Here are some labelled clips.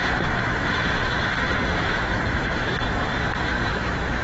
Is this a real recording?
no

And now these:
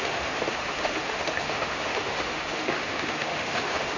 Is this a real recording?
no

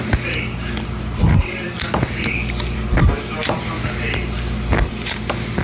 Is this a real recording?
yes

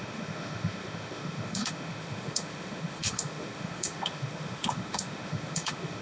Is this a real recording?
no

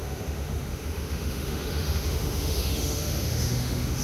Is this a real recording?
no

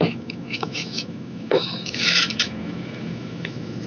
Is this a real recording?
no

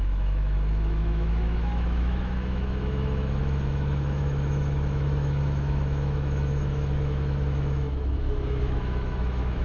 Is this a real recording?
no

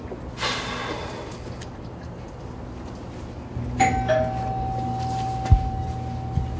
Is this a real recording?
yes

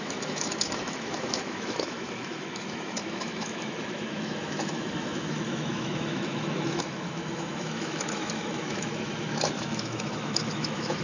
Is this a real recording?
no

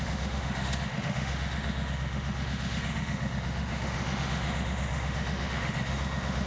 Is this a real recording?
no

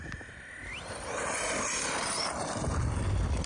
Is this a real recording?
yes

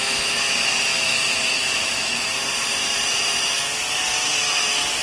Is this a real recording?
no